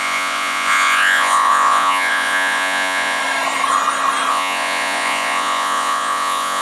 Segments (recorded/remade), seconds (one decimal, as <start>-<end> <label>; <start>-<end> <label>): 0.0-3.2 remade; 3.2-4.3 recorded; 4.3-6.6 remade